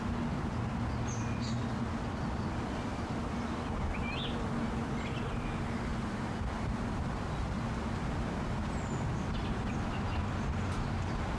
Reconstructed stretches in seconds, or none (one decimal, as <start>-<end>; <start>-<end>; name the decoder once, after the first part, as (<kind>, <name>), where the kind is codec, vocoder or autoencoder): none